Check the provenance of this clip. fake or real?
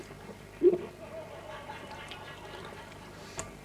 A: real